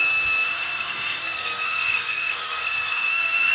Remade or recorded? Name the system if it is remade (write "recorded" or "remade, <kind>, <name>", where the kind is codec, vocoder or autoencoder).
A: remade, codec, SNAC